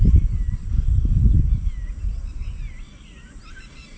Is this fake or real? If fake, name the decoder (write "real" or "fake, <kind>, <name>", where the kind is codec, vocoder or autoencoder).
real